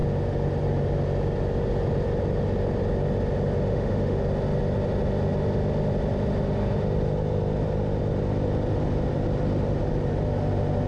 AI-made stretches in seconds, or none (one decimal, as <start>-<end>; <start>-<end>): 3.7-4.2